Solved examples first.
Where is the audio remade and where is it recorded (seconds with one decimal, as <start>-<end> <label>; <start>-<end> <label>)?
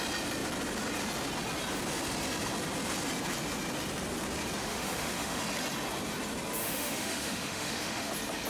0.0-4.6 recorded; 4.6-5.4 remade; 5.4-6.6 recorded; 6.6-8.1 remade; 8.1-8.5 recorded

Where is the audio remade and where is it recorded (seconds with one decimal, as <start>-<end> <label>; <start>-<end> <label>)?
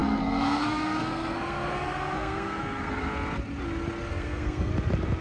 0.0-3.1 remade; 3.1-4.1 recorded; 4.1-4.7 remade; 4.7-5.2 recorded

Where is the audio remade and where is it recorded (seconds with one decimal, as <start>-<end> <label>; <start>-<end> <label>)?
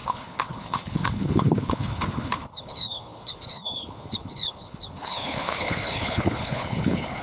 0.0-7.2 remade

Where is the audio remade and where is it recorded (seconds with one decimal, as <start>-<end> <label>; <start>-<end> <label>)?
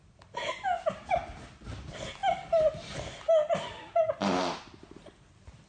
0.0-5.7 recorded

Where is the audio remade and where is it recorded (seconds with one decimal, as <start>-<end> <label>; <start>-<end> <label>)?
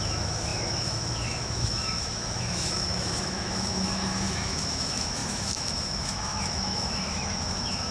0.0-7.9 remade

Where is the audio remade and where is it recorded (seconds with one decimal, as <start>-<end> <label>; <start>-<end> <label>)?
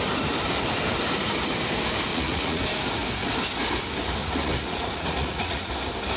0.0-2.1 recorded; 2.1-2.6 remade; 2.6-4.2 recorded; 4.2-5.7 remade; 5.7-6.2 recorded